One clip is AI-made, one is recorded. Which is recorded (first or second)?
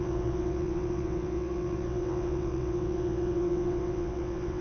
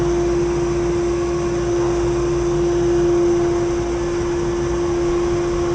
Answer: second